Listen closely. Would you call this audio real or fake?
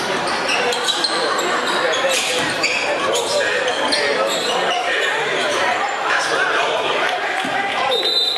fake